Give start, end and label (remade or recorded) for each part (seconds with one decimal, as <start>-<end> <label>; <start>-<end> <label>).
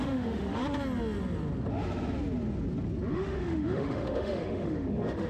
0.0-0.6 remade; 0.6-3.1 recorded; 3.1-5.3 remade